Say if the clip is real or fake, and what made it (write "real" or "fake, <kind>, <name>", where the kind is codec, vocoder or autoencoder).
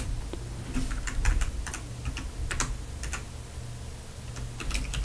real